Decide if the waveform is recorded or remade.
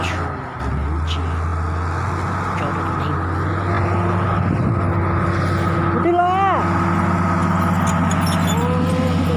recorded